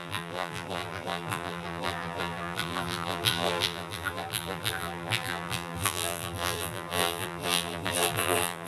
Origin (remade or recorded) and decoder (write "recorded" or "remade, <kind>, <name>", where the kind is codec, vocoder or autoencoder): remade, vocoder, BigVGAN v2